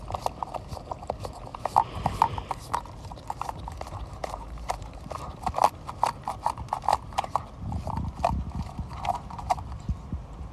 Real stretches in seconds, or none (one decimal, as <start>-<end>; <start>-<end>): 0.0-1.5; 3.2-4.2; 5.3-8.9; 9.5-10.5